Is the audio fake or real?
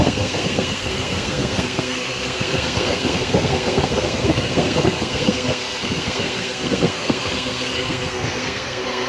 fake